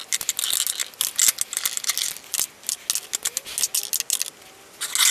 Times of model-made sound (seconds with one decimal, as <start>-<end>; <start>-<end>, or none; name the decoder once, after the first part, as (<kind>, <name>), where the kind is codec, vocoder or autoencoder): none